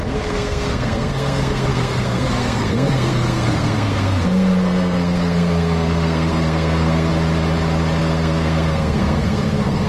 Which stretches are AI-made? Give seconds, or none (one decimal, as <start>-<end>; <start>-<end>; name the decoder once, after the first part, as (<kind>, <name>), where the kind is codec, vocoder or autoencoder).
0.0-7.1 (codec, SNAC); 8.0-9.9